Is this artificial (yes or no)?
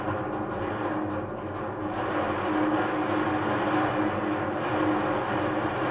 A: no